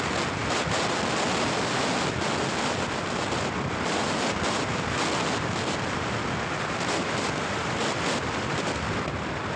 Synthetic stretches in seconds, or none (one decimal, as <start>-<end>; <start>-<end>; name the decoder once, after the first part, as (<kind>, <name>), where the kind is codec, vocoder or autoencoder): none